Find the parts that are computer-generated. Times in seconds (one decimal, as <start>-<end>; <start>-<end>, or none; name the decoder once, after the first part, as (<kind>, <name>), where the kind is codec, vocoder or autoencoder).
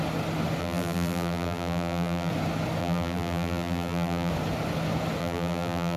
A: 0.6-2.3 (vocoder, BigVGAN v2); 2.8-4.3; 5.2-6.0